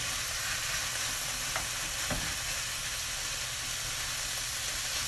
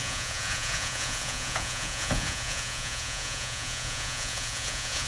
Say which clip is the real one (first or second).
first